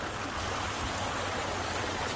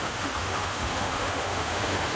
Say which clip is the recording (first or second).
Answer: first